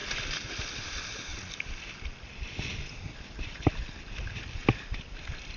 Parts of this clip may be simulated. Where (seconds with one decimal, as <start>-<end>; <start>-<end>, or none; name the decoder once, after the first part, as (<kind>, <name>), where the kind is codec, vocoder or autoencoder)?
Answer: none